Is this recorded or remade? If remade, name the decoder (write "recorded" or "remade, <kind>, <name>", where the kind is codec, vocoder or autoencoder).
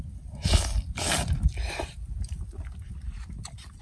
recorded